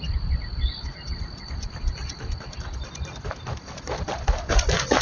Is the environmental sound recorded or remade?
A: recorded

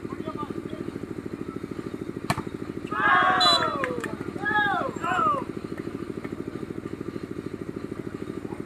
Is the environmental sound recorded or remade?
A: recorded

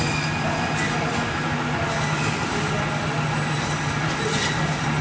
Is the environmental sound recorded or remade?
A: recorded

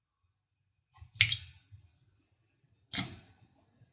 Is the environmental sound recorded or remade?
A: recorded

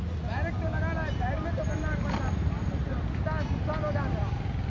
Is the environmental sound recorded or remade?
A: recorded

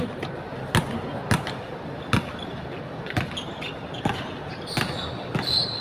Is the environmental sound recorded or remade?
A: recorded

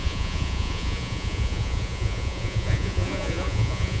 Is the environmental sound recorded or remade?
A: remade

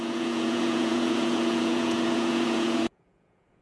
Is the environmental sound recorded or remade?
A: remade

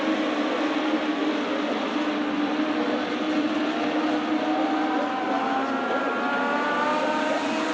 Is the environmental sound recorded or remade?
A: recorded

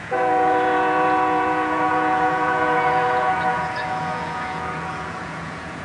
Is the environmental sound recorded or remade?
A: remade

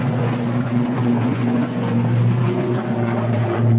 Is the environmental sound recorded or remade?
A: remade